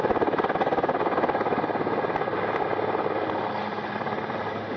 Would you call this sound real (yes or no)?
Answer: yes